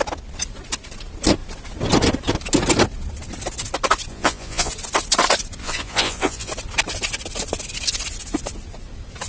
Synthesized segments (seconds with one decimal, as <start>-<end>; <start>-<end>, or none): 4.1-4.7; 5.6-6.5